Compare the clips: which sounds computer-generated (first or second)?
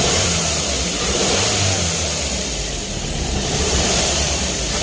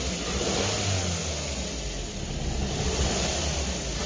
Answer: first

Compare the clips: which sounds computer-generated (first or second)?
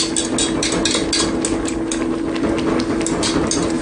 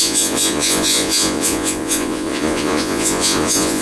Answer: second